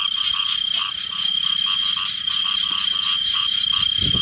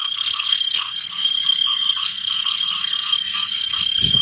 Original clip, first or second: first